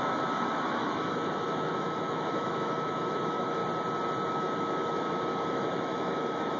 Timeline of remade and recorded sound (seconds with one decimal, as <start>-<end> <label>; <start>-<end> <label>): 0.0-3.6 remade; 3.6-4.3 recorded; 4.3-6.6 remade